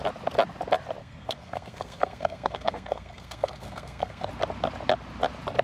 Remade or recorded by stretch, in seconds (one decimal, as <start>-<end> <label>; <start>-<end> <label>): 0.0-1.0 recorded; 1.0-4.3 remade; 4.3-5.6 recorded